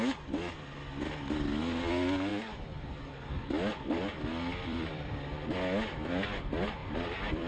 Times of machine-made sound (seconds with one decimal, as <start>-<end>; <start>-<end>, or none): 4.5-5.1; 6.8-7.5

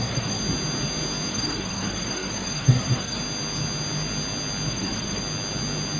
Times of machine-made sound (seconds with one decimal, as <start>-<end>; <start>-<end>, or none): 0.0-0.4; 1.3-3.2; 4.7-5.2

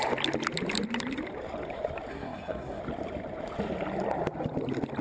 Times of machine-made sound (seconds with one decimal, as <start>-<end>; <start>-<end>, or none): 2.1-2.8

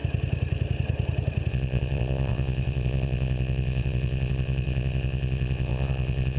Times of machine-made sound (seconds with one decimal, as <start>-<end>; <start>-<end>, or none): 1.5-6.4

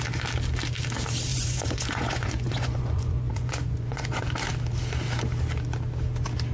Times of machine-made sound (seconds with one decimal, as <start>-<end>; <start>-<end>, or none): 1.3-4.2